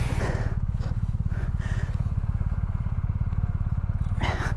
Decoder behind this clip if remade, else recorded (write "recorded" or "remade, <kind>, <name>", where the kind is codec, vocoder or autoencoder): remade, vocoder, Vocos